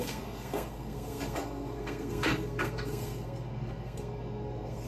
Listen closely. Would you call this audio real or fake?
fake